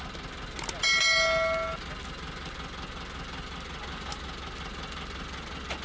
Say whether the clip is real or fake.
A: real